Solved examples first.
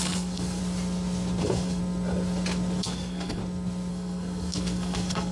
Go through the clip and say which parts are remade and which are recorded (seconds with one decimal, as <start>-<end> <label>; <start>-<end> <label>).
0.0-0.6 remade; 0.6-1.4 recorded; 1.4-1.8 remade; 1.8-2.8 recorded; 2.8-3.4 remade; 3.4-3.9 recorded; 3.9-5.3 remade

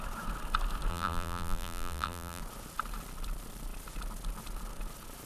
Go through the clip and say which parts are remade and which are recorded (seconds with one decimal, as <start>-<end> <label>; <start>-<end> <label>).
0.0-0.9 recorded; 0.9-2.4 remade; 2.4-5.3 recorded

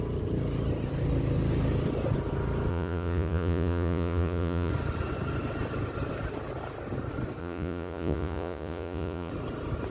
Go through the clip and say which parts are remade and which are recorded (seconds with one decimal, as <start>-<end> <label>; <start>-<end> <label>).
0.0-2.7 recorded; 2.7-4.7 remade; 4.7-7.4 recorded; 7.4-9.3 remade; 9.3-9.9 recorded